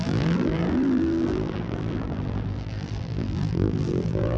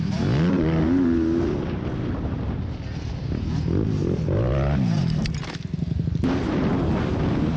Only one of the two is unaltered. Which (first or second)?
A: second